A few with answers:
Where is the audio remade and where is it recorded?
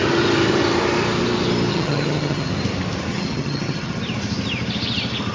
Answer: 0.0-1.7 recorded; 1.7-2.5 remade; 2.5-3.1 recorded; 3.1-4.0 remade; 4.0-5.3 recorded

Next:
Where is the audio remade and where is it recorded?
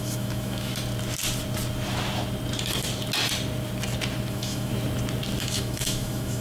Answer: 0.0-0.7 remade; 0.7-4.3 recorded; 4.3-4.7 remade; 4.7-5.4 recorded; 5.4-6.4 remade